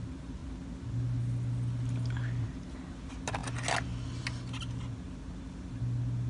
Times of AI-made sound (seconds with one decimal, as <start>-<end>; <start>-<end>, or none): none